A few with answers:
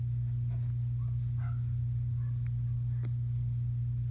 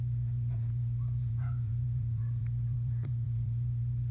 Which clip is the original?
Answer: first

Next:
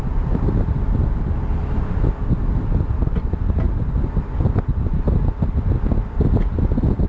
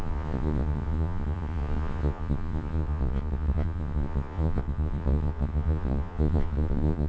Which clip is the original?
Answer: first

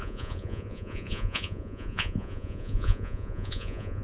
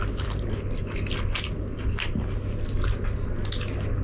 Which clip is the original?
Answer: second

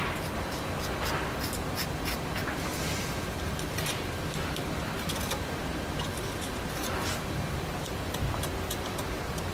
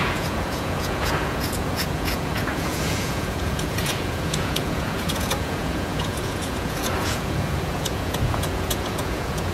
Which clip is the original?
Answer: first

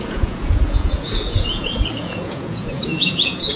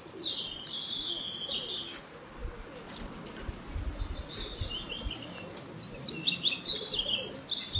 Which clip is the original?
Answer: second